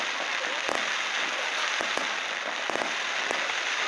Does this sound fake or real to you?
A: real